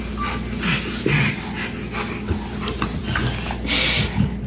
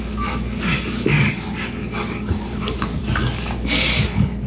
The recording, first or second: first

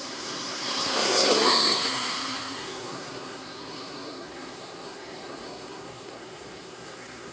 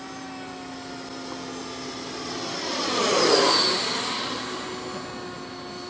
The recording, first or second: second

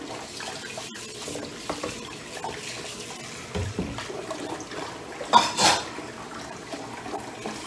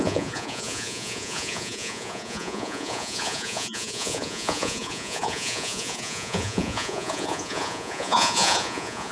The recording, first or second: first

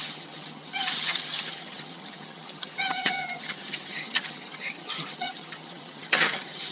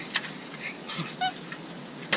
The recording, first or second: second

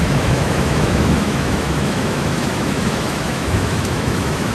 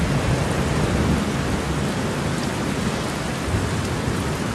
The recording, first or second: second